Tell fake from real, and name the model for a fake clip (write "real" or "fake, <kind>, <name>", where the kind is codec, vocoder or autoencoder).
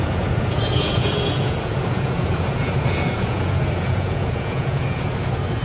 fake, vocoder, Vocos